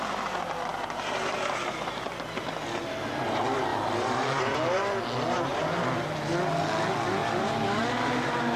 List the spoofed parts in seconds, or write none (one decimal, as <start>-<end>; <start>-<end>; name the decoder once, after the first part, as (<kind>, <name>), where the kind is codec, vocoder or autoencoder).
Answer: 0.7-1.9 (vocoder, BigVGAN v2); 3.7-5.0; 5.5-6.6; 7.2-7.8